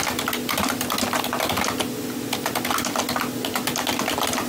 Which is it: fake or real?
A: real